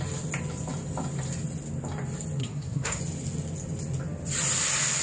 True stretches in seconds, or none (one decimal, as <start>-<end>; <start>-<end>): 0.0-2.4; 3.0-5.0